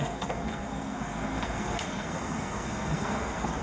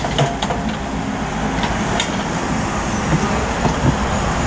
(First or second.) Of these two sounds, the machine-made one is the first